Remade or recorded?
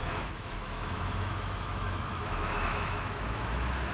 remade